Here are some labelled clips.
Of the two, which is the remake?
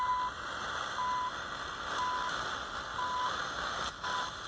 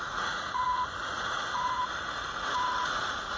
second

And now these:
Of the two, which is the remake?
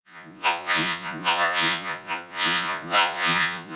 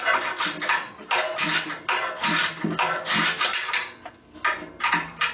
first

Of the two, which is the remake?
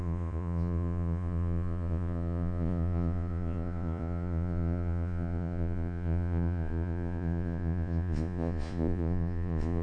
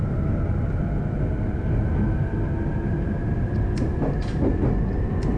first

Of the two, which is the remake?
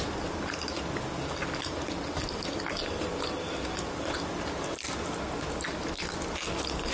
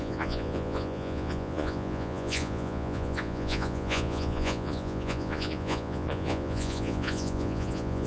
second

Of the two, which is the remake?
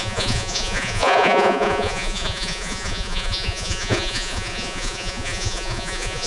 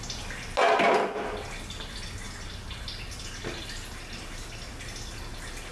first